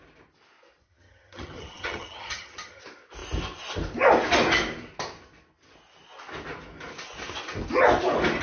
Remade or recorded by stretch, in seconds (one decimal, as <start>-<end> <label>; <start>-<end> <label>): 0.0-0.8 recorded; 0.8-2.8 remade; 2.8-8.4 recorded

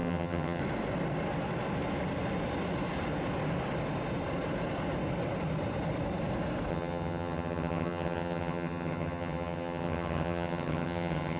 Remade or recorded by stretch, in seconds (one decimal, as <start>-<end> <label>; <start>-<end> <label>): 0.0-0.6 remade; 0.6-6.7 recorded; 6.7-11.4 remade

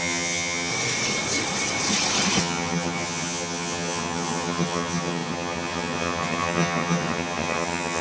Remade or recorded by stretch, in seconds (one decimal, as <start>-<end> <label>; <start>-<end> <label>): 0.0-0.7 remade; 0.7-2.4 recorded; 2.4-8.0 remade

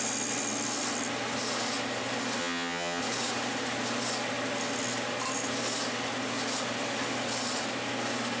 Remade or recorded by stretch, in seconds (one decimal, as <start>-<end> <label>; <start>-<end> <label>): 0.0-2.4 recorded; 2.4-3.0 remade; 3.0-8.4 recorded

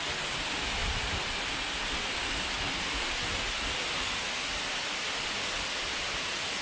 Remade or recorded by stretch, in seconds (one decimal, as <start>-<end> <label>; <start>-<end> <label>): 0.0-6.6 recorded

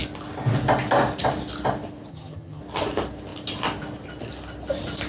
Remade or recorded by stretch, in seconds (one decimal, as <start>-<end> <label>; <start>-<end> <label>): 0.0-2.1 recorded; 2.1-2.6 remade; 2.6-5.1 recorded